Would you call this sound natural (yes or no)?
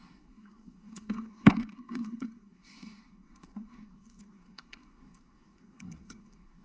no